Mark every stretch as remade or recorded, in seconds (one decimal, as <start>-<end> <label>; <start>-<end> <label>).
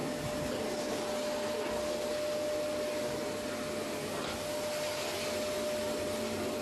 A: 0.0-6.6 recorded